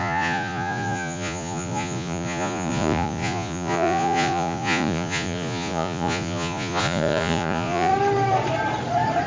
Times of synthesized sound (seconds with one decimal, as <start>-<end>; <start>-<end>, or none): 0.0-7.9